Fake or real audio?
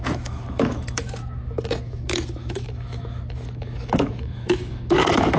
fake